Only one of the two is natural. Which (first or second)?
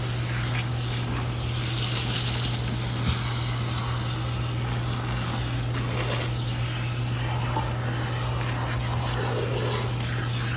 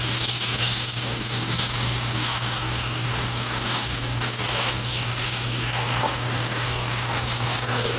first